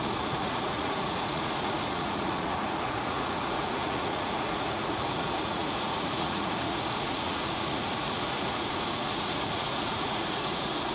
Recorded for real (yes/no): no